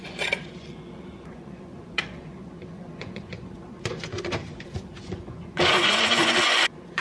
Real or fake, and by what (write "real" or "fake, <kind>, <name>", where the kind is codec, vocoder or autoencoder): fake, vocoder, Vocos